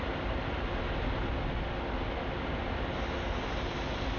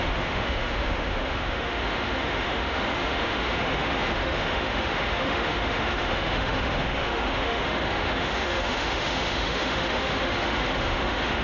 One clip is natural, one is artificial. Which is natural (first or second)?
first